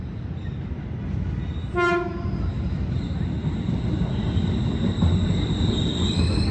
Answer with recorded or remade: recorded